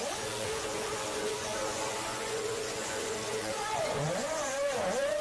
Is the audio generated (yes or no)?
yes